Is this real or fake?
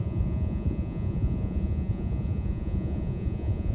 fake